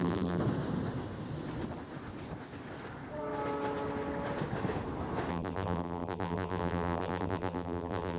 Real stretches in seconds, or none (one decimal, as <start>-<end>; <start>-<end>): 0.4-5.3